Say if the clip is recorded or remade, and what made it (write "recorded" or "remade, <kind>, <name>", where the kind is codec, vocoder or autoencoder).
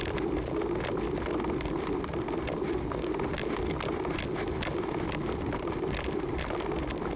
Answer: recorded